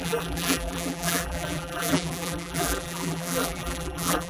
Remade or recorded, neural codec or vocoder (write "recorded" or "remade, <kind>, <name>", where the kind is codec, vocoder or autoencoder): remade, vocoder, BigVGAN v2